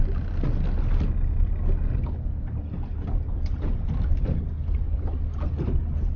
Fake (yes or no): no